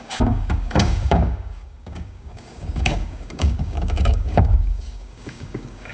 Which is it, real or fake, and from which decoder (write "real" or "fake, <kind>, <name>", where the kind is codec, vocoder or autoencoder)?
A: fake, codec, DAC